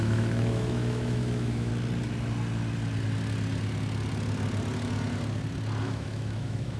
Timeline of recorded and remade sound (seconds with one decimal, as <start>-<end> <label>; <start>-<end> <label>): 0.0-1.7 remade; 1.7-5.8 recorded; 5.8-6.8 remade